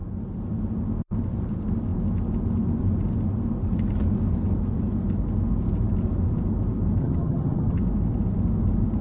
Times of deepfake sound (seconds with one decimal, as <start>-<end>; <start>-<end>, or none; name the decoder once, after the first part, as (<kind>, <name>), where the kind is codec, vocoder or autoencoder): 7.0-7.8 (vocoder, HiFi-GAN)